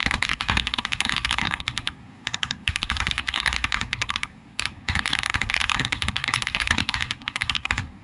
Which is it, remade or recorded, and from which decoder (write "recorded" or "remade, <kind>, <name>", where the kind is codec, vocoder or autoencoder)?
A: remade, codec, SNAC